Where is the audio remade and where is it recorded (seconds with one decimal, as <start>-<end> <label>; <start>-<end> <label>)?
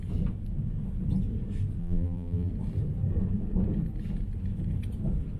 0.0-1.8 recorded; 1.8-2.5 remade; 2.5-5.4 recorded